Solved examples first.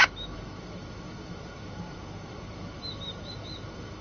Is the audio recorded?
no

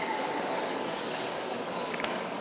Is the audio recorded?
no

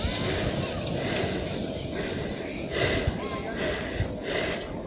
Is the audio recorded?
yes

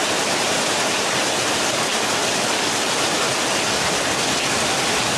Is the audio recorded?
yes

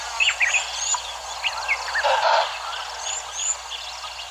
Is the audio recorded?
yes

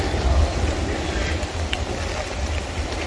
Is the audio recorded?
yes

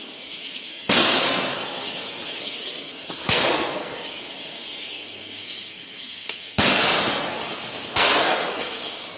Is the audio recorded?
no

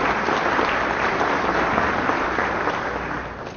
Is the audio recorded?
yes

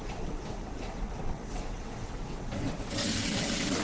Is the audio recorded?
no